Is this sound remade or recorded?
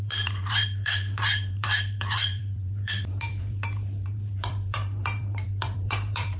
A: remade